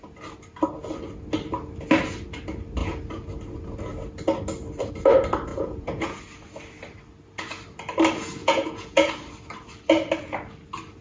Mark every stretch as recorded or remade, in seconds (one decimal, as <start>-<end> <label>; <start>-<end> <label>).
0.0-5.5 recorded; 5.5-6.2 remade; 6.2-8.4 recorded; 8.4-9.1 remade; 9.1-11.0 recorded